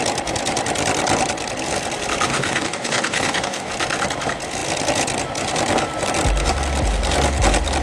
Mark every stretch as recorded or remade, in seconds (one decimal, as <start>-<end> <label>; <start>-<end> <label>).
0.0-2.3 recorded; 2.3-3.7 remade; 3.7-7.8 recorded